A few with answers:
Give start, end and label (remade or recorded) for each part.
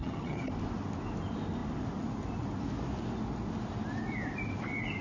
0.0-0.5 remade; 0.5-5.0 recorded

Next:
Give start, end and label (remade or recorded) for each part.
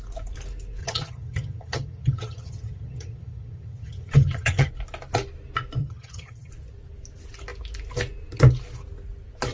0.0-0.8 recorded; 0.8-4.7 remade; 4.7-5.8 recorded; 5.8-6.5 remade; 6.5-9.5 recorded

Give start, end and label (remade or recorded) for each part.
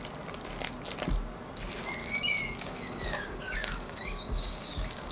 0.0-2.0 recorded; 2.0-5.1 remade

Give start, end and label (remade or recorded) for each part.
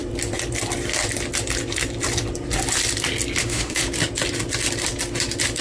0.0-3.4 recorded; 3.4-3.8 remade; 3.8-5.6 recorded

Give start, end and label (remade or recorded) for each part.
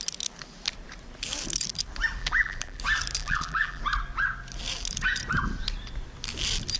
0.0-2.2 recorded; 2.2-2.8 remade; 2.8-3.2 recorded; 3.2-3.8 remade; 3.8-6.8 recorded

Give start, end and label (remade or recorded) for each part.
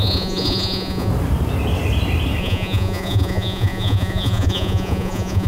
0.0-1.1 remade; 1.1-2.4 recorded; 2.4-5.5 remade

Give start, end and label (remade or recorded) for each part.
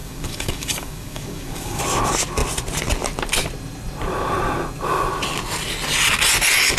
0.0-1.8 remade; 1.8-6.8 recorded